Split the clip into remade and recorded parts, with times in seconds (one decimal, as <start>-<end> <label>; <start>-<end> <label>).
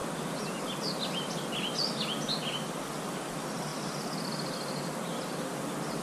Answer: 0.0-6.0 recorded